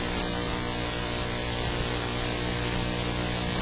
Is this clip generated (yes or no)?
no